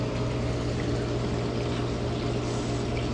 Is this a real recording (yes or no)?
yes